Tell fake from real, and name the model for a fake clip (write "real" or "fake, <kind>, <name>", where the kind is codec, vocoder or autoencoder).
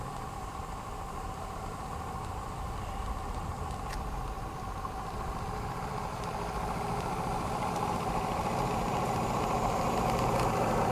fake, vocoder, BigVGAN v2